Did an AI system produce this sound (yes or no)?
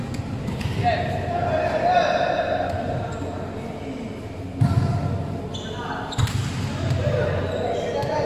no